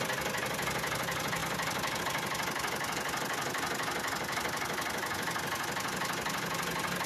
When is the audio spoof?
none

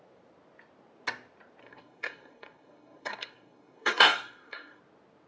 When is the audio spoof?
1.6-4.8 (codec, SNAC)

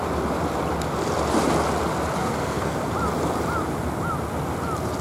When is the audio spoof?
2.2-2.8 (codec, SNAC)

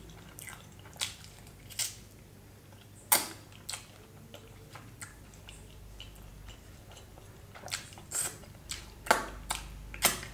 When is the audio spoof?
none

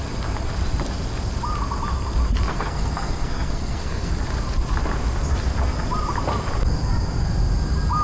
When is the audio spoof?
2.5-4.1 (codec, SNAC)

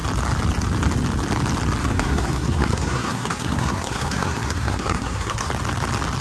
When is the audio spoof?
1.8-5.5 (codec, SNAC)

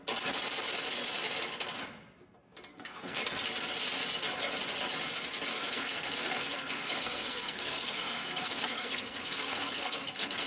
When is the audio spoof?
2.7-3.2 (codec, SNAC); 5.5-10.5

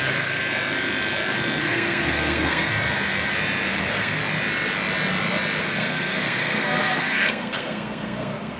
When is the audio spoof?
0.0-0.4 (codec, SNAC); 1.6-2.7; 3.7-4.2; 5.6-8.6